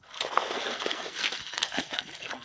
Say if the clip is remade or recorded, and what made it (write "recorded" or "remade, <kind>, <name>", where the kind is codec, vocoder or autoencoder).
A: remade, codec, SNAC